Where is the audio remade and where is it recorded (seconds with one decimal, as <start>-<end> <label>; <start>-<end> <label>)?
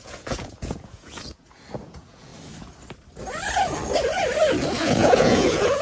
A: 0.0-2.3 remade; 2.3-4.8 recorded; 4.8-5.8 remade